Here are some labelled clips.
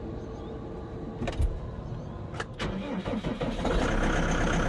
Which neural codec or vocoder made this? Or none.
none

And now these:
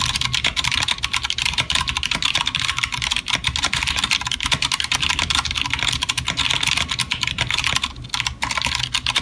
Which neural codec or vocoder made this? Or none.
none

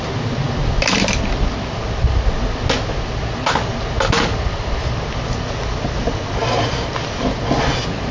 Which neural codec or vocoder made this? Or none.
none